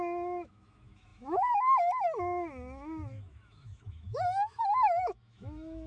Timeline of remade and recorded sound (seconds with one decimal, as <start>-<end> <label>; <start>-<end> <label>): 0.0-5.9 remade